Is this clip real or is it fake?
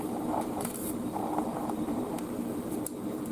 fake